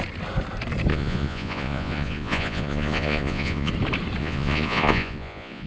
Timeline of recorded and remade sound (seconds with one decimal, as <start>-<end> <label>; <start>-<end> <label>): 0.0-0.9 recorded; 0.9-3.7 remade; 3.7-4.2 recorded; 4.2-5.7 remade